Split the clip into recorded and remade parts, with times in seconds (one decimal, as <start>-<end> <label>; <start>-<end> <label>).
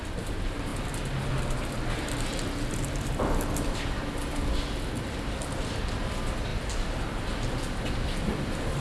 0.0-8.8 recorded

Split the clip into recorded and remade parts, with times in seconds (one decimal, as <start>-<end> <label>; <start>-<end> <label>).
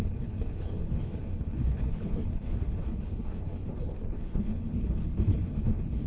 0.0-6.1 remade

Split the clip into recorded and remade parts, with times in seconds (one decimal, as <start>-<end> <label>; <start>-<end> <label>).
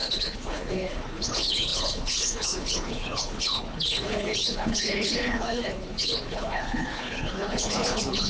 0.0-8.3 remade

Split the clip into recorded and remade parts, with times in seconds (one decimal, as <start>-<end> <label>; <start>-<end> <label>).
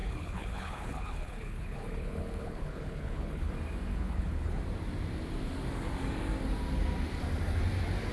0.0-3.5 remade; 3.5-3.9 recorded; 3.9-4.6 remade; 4.6-8.1 recorded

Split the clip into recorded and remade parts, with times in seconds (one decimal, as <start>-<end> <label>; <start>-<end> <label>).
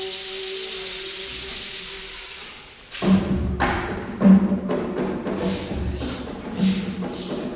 0.0-7.6 recorded